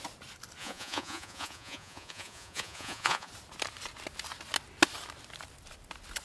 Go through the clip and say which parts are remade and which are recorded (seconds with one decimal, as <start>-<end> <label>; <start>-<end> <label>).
0.0-0.6 recorded; 0.6-3.3 remade; 3.3-6.2 recorded